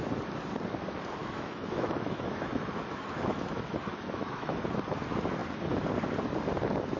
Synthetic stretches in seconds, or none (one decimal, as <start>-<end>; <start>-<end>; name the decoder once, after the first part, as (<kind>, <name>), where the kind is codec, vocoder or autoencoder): 1.2-4.5 (autoencoder, DAC-VAE)